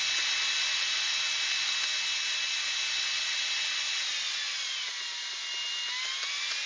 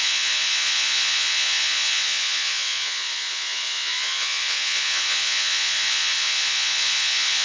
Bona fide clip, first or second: first